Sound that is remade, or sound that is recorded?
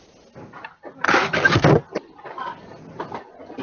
recorded